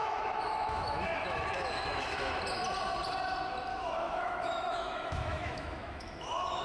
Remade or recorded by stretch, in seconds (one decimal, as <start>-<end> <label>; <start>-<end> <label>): 0.0-2.4 remade; 2.4-3.7 recorded; 3.7-6.6 remade